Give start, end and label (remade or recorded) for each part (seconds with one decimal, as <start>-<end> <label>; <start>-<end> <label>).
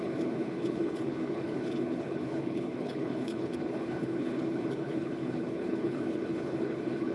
0.0-7.1 remade